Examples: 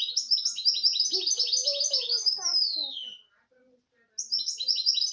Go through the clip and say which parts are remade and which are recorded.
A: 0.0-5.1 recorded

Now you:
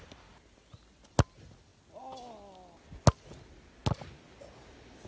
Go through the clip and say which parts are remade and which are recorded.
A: 0.0-5.1 recorded

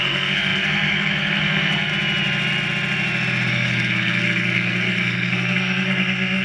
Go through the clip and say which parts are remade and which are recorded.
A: 0.0-1.9 remade; 1.9-3.5 recorded; 3.5-6.4 remade

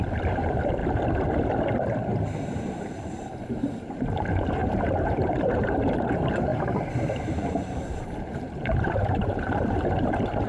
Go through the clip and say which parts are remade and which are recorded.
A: 0.0-0.8 remade; 0.8-2.6 recorded; 2.6-10.5 remade

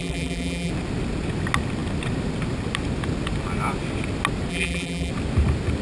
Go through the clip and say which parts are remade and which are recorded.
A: 0.0-0.7 remade; 0.7-4.5 recorded; 4.5-5.1 remade; 5.1-5.8 recorded